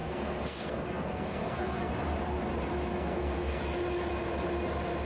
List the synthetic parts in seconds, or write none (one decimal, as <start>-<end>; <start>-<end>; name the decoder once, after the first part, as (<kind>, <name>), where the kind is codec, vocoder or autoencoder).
0.0-1.9 (codec, SNAC); 2.9-3.6